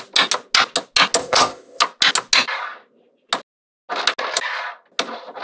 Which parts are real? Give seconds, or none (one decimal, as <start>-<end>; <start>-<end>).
0.0-1.2; 1.8-5.4